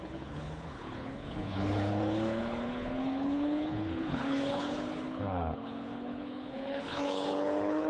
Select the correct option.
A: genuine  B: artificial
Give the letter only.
B